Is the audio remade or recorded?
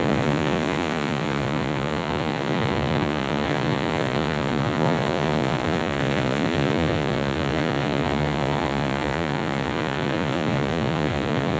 remade